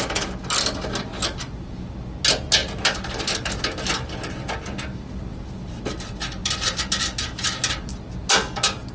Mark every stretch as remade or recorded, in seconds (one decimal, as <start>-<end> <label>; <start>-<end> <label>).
0.0-1.1 recorded; 1.1-1.8 remade; 1.8-2.6 recorded; 2.6-3.6 remade; 3.6-5.3 recorded; 5.3-5.8 remade; 5.8-6.4 recorded; 6.4-7.4 remade; 7.4-8.9 recorded